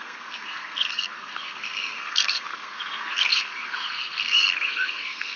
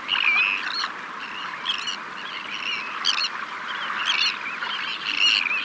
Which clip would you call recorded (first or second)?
second